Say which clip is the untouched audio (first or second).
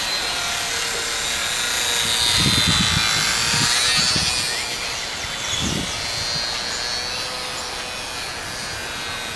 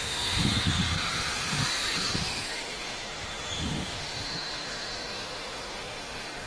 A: first